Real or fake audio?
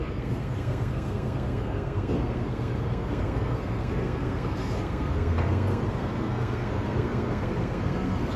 fake